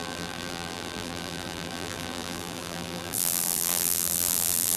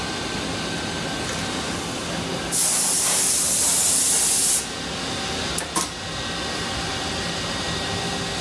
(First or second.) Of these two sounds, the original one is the second